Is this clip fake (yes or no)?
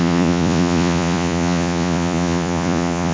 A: yes